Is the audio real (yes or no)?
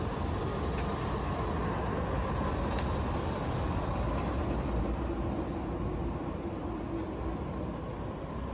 yes